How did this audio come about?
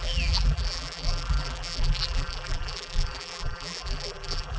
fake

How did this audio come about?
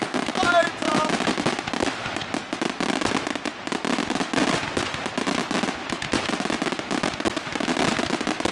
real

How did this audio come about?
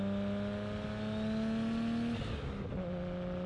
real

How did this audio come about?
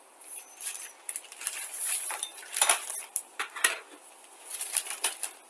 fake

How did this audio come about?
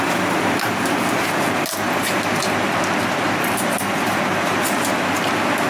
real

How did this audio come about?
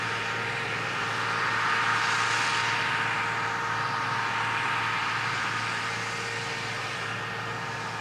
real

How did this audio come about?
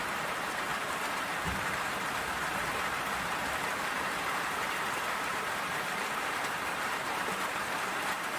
fake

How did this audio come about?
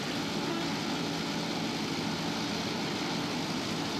real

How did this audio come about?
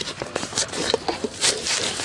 fake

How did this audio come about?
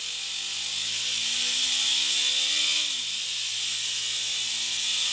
real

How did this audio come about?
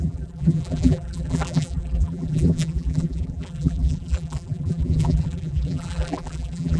fake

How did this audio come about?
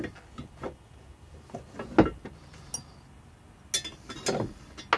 real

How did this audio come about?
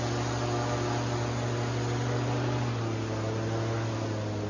real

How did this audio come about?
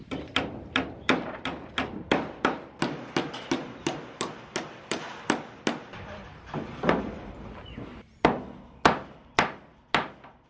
real